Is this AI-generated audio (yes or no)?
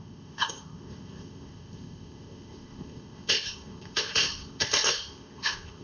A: yes